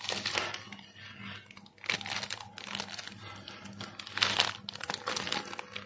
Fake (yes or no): yes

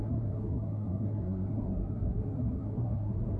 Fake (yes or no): yes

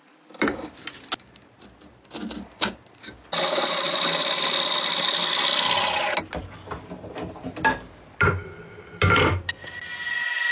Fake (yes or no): no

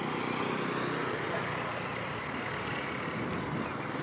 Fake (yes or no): no